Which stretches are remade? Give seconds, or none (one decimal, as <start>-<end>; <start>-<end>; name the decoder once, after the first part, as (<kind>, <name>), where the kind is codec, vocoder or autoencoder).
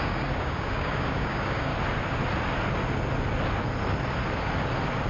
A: 0.0-1.7 (codec, DAC)